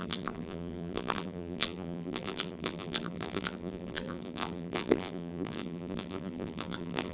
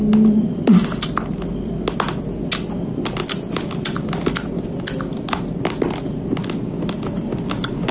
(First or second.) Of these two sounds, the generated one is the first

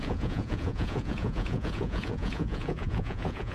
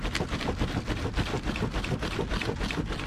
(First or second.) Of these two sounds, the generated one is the first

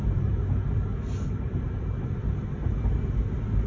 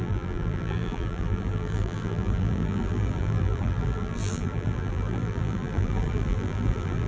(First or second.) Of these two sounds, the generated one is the second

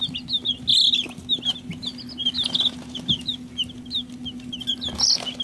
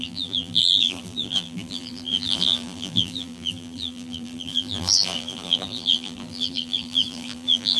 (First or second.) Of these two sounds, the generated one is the second